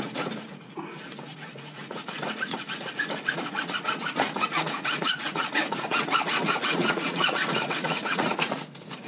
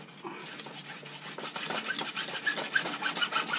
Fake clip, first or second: first